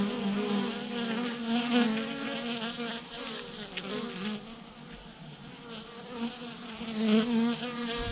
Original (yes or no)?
yes